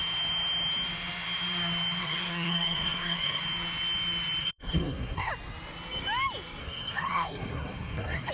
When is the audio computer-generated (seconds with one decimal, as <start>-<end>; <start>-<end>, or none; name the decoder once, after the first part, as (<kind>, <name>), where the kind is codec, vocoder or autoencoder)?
2.0-3.4 (codec, SNAC); 4.4-5.3; 6.6-8.3